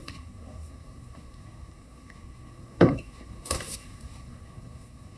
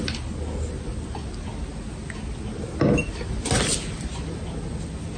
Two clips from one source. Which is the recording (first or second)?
second